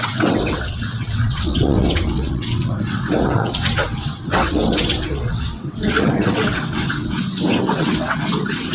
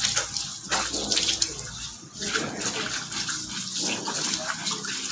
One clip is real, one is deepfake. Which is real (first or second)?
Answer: second